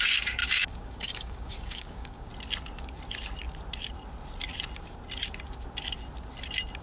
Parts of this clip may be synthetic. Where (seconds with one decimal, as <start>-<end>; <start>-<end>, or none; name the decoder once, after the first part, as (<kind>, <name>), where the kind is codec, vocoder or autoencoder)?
0.0-2.3 (codec, DAC)